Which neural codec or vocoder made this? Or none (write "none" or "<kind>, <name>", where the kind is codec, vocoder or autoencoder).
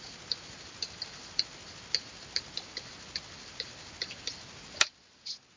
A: none